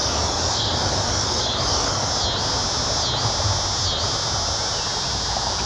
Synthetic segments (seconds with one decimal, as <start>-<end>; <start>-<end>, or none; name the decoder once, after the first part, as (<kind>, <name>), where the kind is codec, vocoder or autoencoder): 0.0-2.1 (codec, DAC)